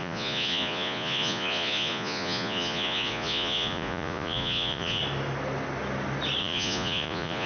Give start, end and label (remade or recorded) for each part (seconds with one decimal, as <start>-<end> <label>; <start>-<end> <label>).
0.0-5.0 remade; 5.0-6.4 recorded; 6.4-7.5 remade